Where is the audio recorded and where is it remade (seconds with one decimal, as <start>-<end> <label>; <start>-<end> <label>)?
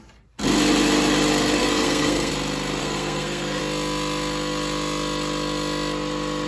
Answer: 0.0-1.6 recorded; 1.6-2.3 remade; 2.3-2.8 recorded; 2.8-3.6 remade; 3.6-6.5 recorded